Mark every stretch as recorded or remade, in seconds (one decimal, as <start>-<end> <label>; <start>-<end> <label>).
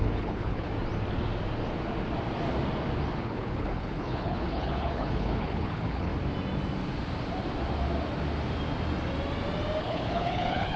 0.0-0.7 remade; 0.7-3.2 recorded; 3.2-6.1 remade; 6.1-9.8 recorded; 9.8-10.8 remade